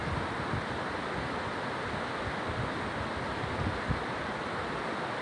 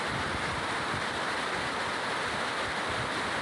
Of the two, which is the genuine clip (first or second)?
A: first